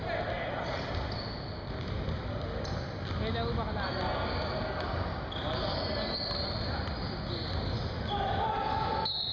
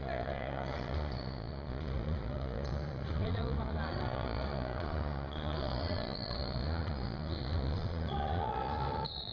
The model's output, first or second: second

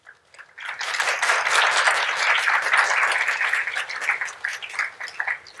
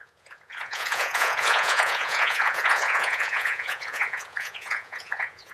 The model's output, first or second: second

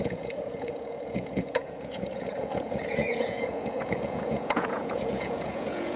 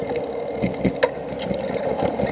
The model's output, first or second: first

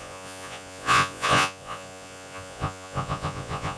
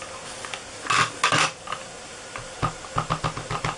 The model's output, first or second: first